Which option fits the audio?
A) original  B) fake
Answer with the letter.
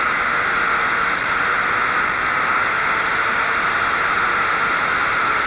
A